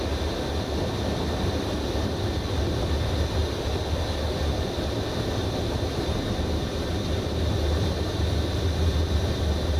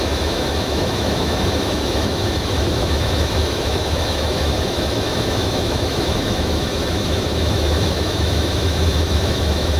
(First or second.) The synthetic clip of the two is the second